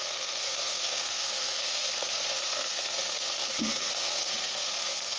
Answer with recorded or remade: remade